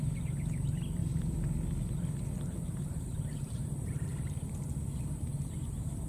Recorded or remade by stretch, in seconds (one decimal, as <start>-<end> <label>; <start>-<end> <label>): 0.0-1.0 remade; 1.0-2.4 recorded; 2.4-4.1 remade; 4.1-6.1 recorded